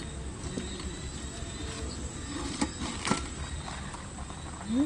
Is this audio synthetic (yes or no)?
no